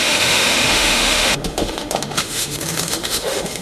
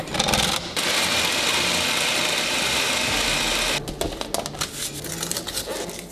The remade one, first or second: first